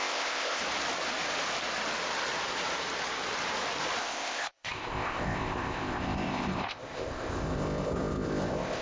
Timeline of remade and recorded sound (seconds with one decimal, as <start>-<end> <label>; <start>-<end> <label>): 0.0-0.6 remade; 0.6-4.0 recorded; 4.0-8.8 remade